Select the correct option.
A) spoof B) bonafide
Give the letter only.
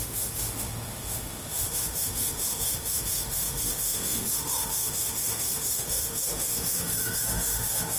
A